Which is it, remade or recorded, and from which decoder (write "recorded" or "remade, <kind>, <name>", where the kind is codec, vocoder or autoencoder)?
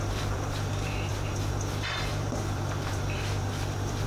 remade, vocoder, BigVGAN v2